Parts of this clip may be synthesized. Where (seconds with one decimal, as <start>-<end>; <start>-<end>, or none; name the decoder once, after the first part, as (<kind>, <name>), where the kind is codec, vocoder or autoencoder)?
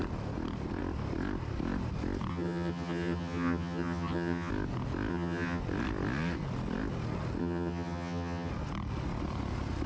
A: 2.3-4.5 (vocoder, HiFi-GAN); 5.1-5.6; 7.4-8.5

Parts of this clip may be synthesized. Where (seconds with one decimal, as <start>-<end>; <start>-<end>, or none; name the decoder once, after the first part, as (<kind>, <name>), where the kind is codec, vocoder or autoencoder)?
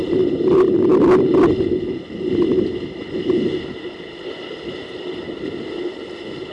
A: none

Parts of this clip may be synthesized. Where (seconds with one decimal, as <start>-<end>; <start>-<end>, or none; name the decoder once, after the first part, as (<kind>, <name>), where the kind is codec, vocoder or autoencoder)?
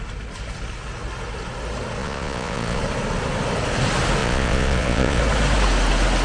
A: 2.0-2.8 (vocoder, Vocos); 4.2-5.2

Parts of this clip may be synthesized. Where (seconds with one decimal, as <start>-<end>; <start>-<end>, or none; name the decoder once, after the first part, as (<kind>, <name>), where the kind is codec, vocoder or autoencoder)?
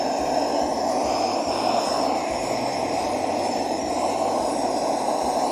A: none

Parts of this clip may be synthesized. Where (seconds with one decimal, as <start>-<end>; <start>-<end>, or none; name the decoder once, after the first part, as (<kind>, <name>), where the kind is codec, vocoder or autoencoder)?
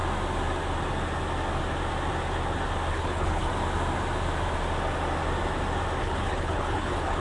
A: 2.9-3.5 (codec, HILCodec); 6.0-7.2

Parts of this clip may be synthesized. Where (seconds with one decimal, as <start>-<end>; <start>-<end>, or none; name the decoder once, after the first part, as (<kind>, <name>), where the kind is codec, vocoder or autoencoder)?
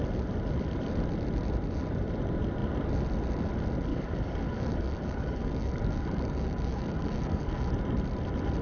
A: 3.9-7.7 (codec, DAC)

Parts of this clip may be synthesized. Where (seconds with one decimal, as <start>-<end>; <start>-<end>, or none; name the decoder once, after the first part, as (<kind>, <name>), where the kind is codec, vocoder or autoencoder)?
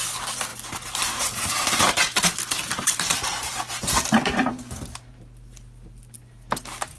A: 0.5-3.5 (vocoder, BigVGAN v2)